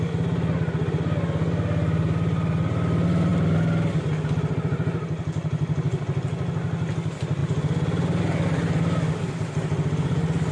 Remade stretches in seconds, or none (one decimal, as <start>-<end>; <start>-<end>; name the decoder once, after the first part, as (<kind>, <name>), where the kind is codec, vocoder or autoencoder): none